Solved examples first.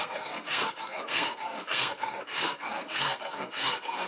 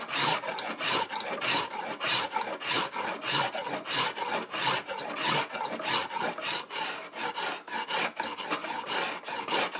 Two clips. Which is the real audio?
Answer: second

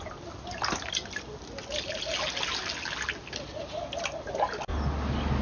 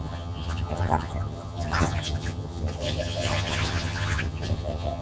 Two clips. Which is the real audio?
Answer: first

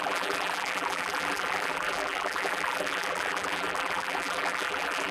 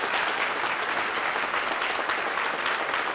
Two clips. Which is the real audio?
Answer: second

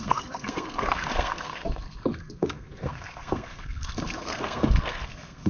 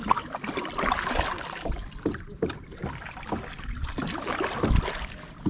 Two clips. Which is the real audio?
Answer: second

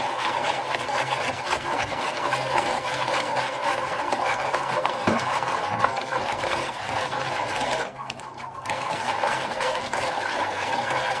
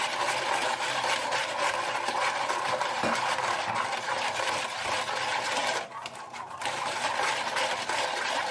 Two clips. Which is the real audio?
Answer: second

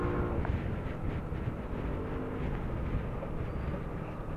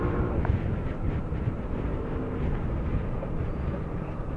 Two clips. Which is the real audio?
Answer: first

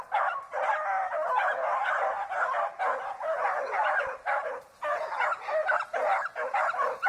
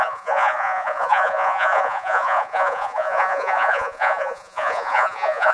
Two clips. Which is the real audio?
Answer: first